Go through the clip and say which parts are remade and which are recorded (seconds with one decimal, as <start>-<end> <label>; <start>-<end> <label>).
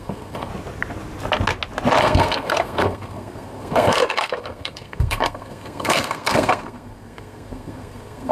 0.0-0.5 remade; 0.5-2.0 recorded; 2.0-8.3 remade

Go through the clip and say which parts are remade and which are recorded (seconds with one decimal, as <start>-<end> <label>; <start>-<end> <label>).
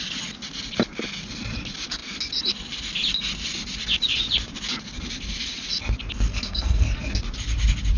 0.0-6.3 recorded; 6.3-7.2 remade; 7.2-8.0 recorded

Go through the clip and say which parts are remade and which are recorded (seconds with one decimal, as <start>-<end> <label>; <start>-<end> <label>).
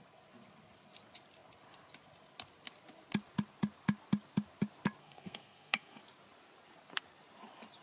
0.0-5.0 recorded; 5.0-6.0 remade; 6.0-7.8 recorded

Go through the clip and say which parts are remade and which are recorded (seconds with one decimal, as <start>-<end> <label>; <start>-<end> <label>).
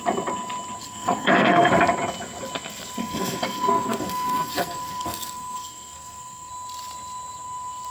0.0-0.8 recorded; 0.8-1.7 remade; 1.7-3.0 recorded; 3.0-6.5 remade; 6.5-7.9 recorded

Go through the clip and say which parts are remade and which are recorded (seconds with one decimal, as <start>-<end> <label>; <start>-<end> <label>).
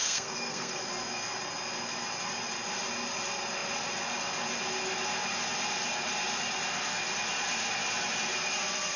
0.0-0.8 remade; 0.8-9.0 recorded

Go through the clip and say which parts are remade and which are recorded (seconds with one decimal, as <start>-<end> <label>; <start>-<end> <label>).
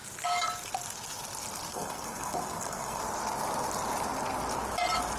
0.0-1.7 recorded; 1.7-3.0 remade; 3.0-5.2 recorded